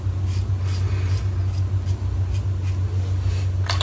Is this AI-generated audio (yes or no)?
no